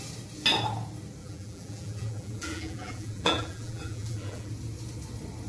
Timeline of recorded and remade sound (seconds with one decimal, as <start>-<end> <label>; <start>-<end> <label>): 0.0-1.2 recorded; 1.2-4.5 remade; 4.5-5.5 recorded